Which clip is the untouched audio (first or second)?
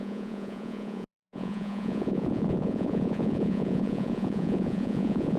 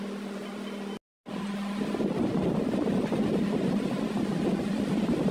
second